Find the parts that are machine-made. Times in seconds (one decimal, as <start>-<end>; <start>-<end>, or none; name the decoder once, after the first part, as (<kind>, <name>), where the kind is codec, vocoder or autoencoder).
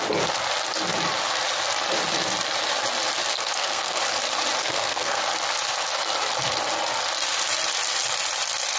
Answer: 3.3-4.0 (codec, SNAC); 4.6-5.2